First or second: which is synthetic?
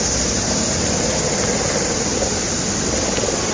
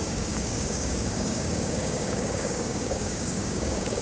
second